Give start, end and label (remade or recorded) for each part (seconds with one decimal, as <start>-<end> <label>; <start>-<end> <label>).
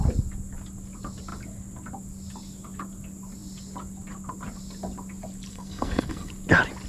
0.0-5.5 recorded; 5.5-6.3 remade; 6.3-6.9 recorded